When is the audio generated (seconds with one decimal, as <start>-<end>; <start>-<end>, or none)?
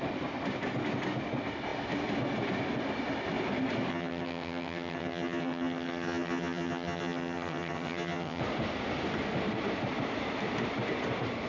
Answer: 3.9-8.4